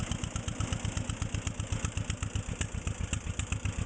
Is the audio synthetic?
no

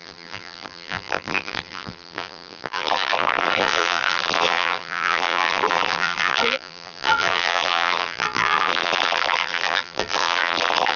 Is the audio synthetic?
yes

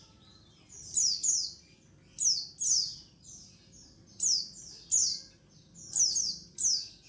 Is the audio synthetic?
no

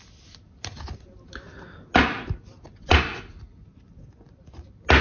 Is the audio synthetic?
no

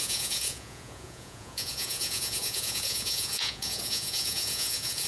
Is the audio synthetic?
yes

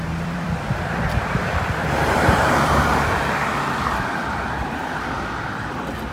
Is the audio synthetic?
yes